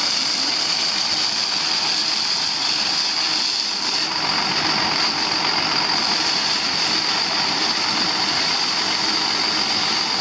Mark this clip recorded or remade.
recorded